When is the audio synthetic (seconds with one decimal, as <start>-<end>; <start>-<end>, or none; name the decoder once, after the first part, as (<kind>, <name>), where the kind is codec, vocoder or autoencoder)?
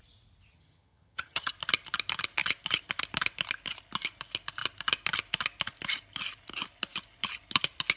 0.5-1.5 (vocoder, HiFi-GAN)